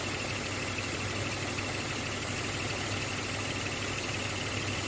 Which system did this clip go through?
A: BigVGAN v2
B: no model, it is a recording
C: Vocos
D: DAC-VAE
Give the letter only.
B